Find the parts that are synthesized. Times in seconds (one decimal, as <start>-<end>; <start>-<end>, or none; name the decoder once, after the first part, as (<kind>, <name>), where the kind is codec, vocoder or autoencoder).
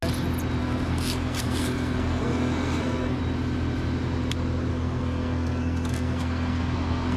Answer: 0.6-3.2 (codec, SNAC); 4.7-7.2